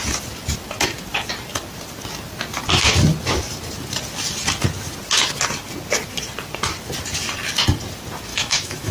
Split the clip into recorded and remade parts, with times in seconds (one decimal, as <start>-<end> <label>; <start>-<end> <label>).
0.0-8.3 recorded; 8.3-8.9 remade